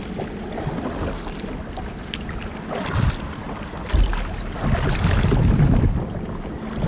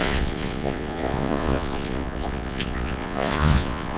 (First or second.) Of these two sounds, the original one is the first